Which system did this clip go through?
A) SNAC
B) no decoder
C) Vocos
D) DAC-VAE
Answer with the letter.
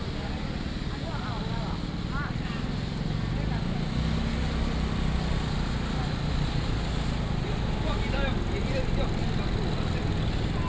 B